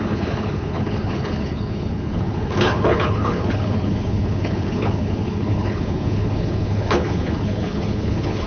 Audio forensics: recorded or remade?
remade